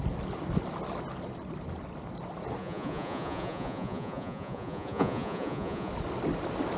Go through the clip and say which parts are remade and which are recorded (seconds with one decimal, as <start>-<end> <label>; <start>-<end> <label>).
0.0-2.6 recorded; 2.6-5.9 remade; 5.9-6.8 recorded